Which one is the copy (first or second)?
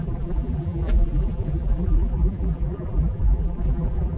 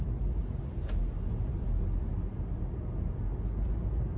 first